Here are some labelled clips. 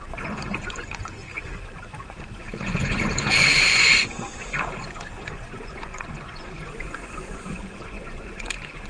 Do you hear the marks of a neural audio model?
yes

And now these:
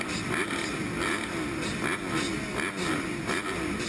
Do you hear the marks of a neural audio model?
no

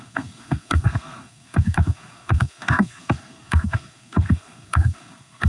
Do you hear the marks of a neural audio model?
yes